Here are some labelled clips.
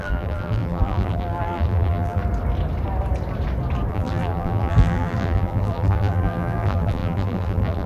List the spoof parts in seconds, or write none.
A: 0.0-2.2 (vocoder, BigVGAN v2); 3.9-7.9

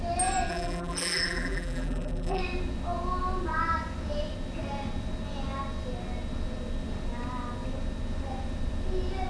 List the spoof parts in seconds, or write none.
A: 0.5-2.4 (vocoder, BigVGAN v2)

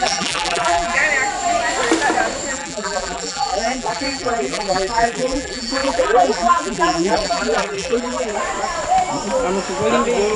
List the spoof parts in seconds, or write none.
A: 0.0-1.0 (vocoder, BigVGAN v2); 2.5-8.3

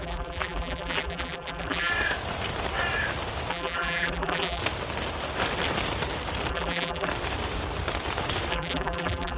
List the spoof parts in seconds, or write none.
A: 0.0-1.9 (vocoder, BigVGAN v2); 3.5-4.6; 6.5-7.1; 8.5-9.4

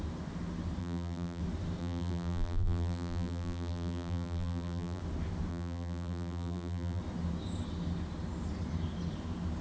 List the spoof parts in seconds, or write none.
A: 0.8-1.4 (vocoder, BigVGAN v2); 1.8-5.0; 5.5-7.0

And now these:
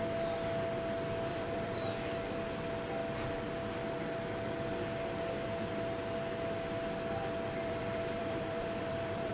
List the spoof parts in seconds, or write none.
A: 1.3-1.9 (vocoder, BigVGAN v2); 7.6-9.3